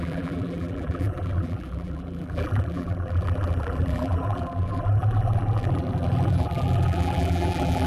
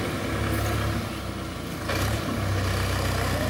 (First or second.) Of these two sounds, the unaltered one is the second